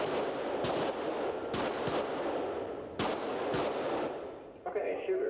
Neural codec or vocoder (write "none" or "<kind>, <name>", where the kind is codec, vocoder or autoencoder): none